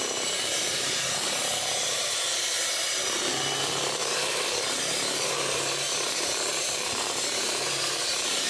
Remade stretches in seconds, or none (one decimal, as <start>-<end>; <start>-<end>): 0.0-8.5